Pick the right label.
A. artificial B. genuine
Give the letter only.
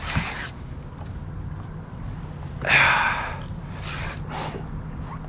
B